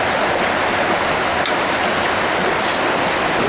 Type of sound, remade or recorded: recorded